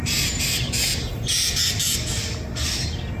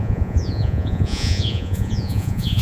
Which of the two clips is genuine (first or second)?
first